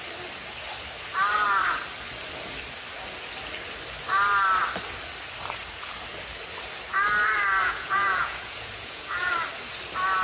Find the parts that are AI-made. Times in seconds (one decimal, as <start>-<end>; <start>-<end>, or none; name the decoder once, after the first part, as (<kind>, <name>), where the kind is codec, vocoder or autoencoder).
7.6-9.3 (vocoder, Vocos)